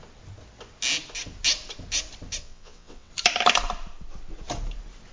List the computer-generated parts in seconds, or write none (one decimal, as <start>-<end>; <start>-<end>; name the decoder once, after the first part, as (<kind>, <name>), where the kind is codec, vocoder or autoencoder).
2.4-3.1 (vocoder, WaveNeXt)